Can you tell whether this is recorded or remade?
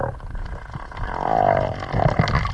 recorded